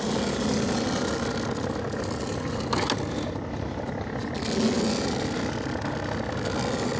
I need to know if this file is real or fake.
real